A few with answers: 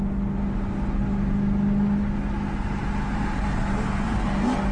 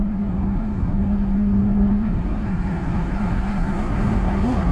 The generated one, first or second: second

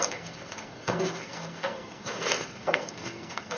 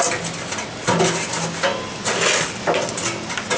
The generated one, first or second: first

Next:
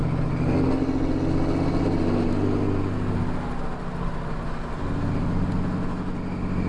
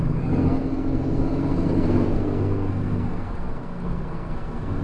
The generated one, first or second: second